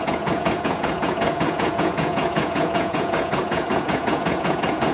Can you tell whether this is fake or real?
fake